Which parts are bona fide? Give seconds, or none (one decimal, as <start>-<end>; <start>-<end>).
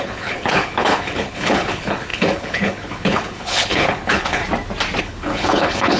4.4-5.0